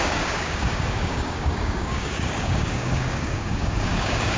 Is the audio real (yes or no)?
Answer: no